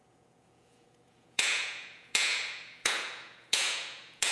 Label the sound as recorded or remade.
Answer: remade